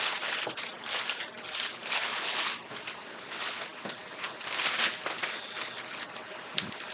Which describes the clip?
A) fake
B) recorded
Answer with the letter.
B